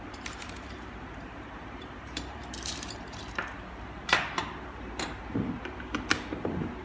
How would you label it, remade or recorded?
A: remade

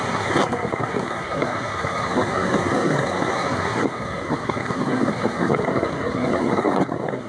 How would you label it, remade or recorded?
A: remade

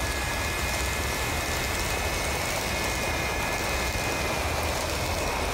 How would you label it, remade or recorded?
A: recorded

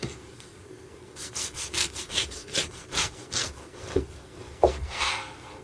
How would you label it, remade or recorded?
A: remade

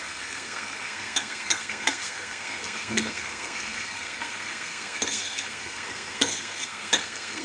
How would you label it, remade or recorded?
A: remade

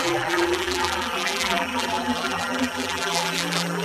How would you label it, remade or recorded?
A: remade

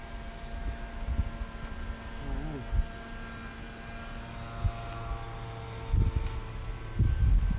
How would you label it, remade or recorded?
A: recorded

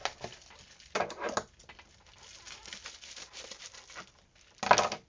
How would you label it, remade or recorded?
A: recorded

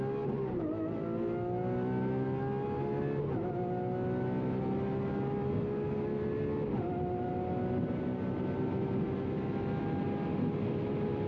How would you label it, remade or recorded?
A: recorded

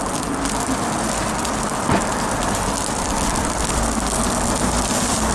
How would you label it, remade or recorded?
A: recorded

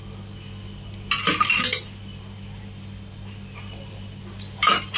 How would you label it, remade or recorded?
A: recorded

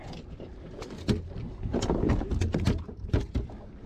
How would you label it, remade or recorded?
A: recorded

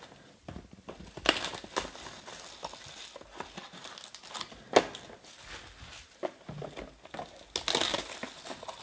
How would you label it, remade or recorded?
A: recorded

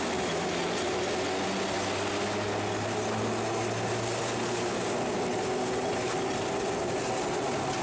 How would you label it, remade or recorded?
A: recorded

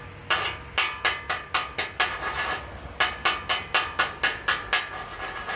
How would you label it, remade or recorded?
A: recorded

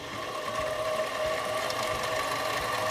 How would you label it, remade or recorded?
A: recorded